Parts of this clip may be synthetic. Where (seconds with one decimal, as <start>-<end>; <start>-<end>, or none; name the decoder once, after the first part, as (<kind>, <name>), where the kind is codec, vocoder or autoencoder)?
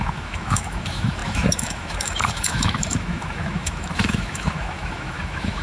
0.0-5.6 (autoencoder, DAC-VAE)